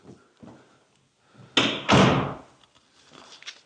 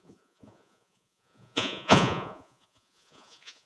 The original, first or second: first